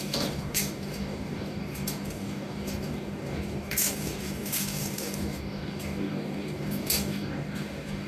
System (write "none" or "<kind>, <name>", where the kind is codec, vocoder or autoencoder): codec, DAC